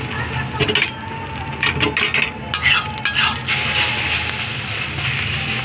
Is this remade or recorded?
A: recorded